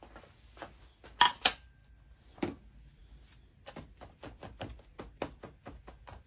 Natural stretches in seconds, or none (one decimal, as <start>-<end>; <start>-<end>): 0.0-6.3